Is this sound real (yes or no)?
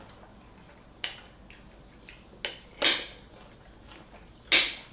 yes